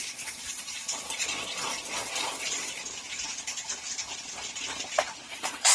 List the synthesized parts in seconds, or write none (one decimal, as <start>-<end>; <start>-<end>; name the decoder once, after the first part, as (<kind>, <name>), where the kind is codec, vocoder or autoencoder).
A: 0.0-2.8 (vocoder, Vocos); 5.3-5.7